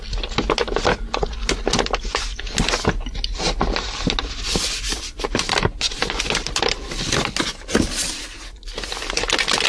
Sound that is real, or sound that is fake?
real